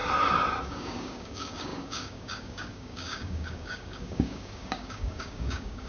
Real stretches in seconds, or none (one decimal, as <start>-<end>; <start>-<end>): 0.0-0.6